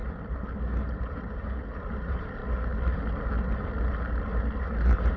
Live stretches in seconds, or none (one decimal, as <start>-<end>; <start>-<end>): 0.0-0.6; 2.4-4.6